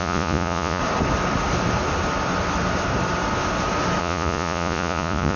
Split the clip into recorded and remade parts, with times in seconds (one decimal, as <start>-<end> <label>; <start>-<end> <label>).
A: 0.0-0.8 remade; 0.8-4.0 recorded; 4.0-5.4 remade